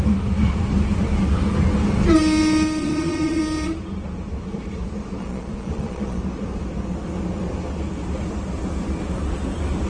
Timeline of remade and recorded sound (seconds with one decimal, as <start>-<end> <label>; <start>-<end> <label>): 0.0-2.8 recorded; 2.8-3.4 remade; 3.4-5.2 recorded; 5.2-6.2 remade; 6.2-9.9 recorded